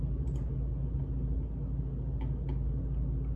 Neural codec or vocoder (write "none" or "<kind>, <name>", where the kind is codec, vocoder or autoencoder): none